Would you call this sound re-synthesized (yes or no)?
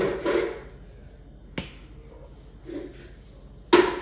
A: no